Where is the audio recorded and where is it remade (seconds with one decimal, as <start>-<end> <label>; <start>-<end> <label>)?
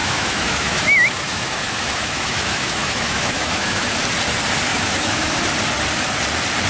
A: 0.0-4.0 remade; 4.0-4.7 recorded; 4.7-5.4 remade; 5.4-6.7 recorded